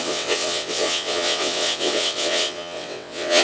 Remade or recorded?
remade